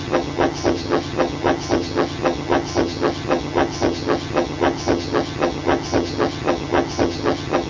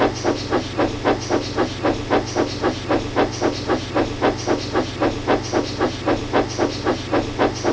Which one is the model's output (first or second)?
first